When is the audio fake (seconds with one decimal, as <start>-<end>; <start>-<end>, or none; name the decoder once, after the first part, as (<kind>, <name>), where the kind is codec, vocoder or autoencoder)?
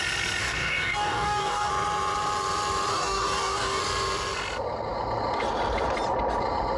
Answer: 0.4-1.7 (codec, DAC); 2.9-3.8